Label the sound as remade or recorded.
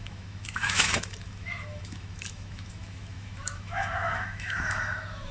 remade